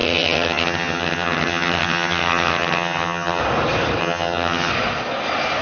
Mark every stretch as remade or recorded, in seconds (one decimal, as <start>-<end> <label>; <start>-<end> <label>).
0.0-3.4 remade; 3.4-4.0 recorded; 4.0-4.7 remade; 4.7-5.6 recorded